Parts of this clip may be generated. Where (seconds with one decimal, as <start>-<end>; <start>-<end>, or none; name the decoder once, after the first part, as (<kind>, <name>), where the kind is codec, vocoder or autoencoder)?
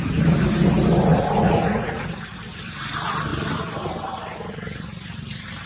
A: 1.1-2.1 (vocoder, Vocos)